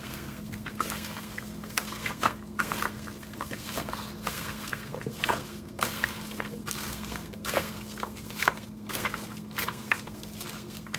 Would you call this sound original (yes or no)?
no